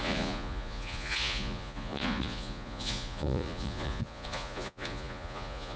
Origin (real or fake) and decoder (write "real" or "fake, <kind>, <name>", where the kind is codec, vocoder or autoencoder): fake, vocoder, Vocos